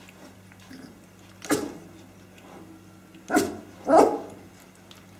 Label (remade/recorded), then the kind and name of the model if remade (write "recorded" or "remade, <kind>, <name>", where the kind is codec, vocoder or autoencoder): recorded